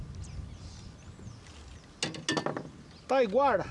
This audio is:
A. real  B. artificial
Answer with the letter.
A